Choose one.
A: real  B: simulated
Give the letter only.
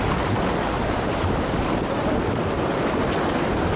A